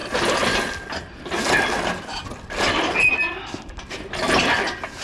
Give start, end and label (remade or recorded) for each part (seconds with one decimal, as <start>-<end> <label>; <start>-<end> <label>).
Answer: 0.0-5.0 recorded